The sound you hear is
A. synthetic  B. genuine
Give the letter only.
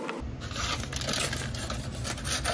B